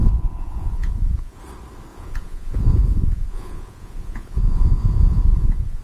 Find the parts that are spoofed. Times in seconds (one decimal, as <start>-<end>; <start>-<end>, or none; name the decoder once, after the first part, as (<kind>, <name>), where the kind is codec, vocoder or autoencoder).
0.0-1.4 (vocoder, Vocos); 1.9-5.8